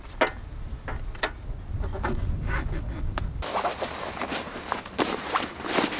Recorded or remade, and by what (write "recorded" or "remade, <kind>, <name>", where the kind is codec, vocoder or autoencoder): recorded